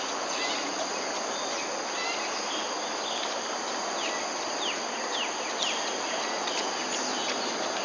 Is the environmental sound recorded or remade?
recorded